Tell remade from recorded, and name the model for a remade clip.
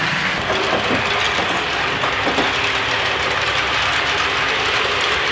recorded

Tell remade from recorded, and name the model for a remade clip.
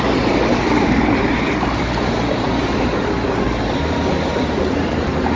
remade, vocoder, BigVGAN v2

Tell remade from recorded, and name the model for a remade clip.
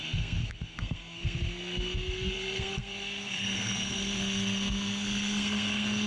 remade, codec, SNAC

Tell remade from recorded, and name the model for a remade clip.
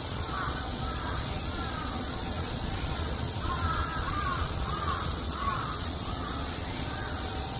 remade, vocoder, Vocos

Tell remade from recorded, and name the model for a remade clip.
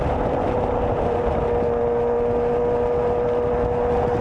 recorded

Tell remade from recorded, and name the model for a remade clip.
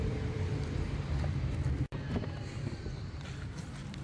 remade, vocoder, BigVGAN v2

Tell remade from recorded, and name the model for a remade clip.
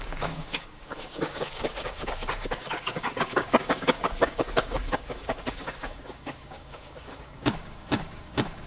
remade, codec, DAC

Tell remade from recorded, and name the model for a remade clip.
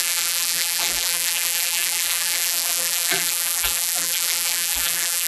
remade, vocoder, BigVGAN v2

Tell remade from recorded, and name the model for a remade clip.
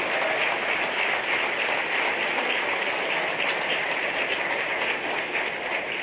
recorded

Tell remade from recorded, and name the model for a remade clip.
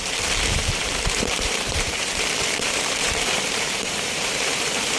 remade, vocoder, BigVGAN v2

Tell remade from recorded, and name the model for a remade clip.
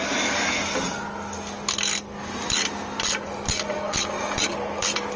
recorded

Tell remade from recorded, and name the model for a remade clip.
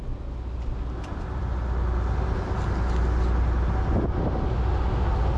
recorded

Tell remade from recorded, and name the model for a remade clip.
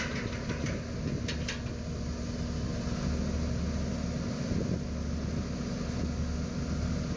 recorded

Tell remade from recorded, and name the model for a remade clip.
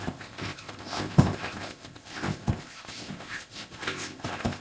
remade, codec, ZipCodec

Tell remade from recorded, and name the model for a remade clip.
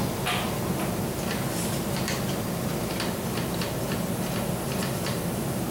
recorded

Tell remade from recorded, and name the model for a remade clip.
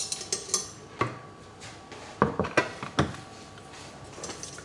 recorded